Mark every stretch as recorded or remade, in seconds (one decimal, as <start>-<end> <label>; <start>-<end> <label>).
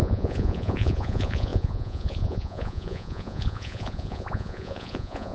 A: 0.0-5.3 remade